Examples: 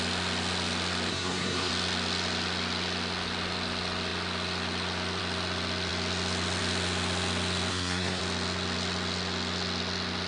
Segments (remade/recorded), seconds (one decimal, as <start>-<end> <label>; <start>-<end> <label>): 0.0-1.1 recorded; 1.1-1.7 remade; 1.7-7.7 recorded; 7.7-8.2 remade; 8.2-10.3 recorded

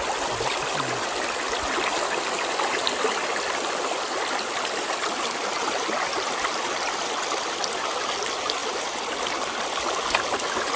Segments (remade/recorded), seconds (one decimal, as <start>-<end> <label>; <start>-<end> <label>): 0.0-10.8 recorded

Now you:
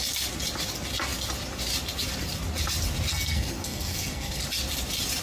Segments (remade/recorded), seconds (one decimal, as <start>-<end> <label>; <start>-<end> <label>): 0.0-3.1 recorded; 3.1-4.4 remade; 4.4-5.2 recorded

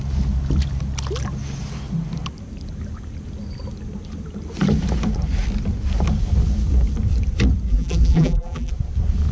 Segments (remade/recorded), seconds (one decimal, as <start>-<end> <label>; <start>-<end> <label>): 0.0-7.7 recorded; 7.7-8.7 remade; 8.7-9.3 recorded

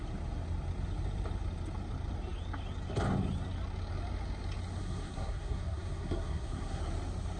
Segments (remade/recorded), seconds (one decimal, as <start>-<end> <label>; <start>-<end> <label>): 0.0-4.8 recorded; 4.8-6.8 remade; 6.8-7.4 recorded

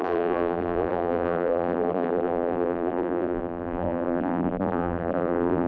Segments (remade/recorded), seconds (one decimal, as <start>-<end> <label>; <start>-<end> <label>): 0.0-5.7 remade